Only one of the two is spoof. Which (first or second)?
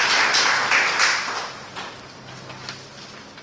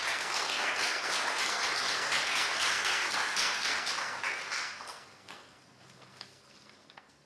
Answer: second